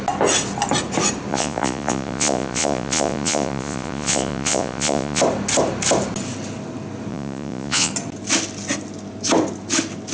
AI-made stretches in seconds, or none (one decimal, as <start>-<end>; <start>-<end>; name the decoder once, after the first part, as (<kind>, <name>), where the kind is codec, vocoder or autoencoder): 1.3-5.2 (vocoder, Vocos); 7.1-7.9